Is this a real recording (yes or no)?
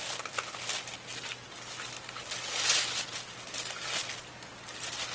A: yes